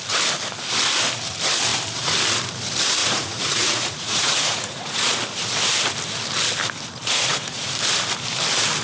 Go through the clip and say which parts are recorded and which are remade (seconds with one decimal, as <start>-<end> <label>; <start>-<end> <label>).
0.0-3.0 recorded; 3.0-5.2 remade; 5.2-7.1 recorded; 7.1-7.7 remade; 7.7-8.8 recorded